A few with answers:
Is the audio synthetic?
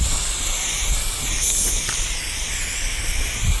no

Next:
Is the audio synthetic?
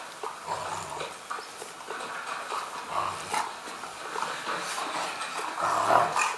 no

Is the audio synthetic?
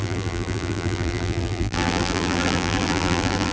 yes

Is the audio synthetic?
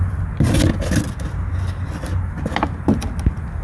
no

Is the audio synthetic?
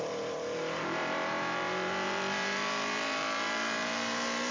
yes